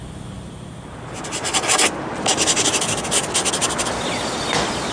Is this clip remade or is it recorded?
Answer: recorded